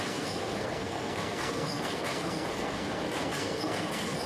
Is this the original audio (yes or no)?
no